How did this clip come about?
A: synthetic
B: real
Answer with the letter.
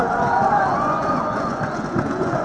A